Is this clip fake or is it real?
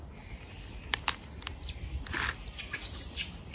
real